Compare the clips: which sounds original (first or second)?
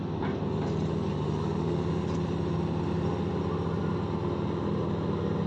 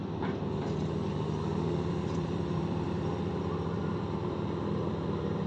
first